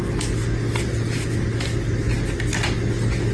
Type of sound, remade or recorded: recorded